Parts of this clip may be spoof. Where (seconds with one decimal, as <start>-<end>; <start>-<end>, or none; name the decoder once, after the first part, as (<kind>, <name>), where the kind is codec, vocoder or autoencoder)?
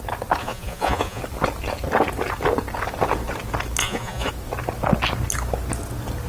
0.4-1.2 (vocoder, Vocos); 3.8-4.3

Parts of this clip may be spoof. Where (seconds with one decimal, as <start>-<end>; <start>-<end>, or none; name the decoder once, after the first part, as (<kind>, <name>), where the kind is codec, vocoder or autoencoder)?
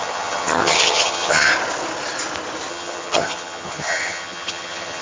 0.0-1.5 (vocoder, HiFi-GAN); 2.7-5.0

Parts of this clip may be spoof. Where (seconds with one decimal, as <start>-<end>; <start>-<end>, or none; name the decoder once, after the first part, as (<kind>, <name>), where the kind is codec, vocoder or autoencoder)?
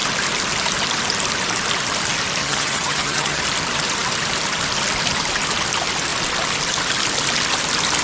2.4-3.4 (vocoder, HiFi-GAN)